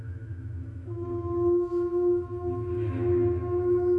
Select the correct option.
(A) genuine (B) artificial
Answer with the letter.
B